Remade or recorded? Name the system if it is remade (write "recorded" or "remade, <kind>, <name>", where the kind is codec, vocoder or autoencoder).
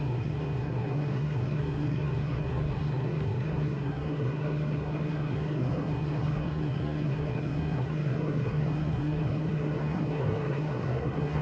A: remade, codec, SNAC